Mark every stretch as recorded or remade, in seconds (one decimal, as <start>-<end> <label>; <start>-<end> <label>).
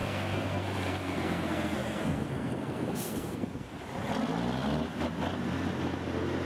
0.0-3.8 remade; 3.8-6.4 recorded